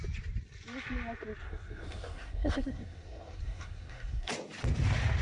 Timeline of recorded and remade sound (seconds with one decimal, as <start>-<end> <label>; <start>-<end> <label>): 0.0-1.4 recorded; 1.4-4.3 remade; 4.3-5.2 recorded